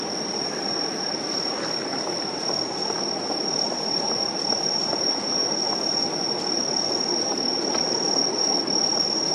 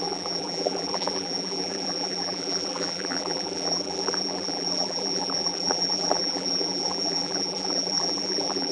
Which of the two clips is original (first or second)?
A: first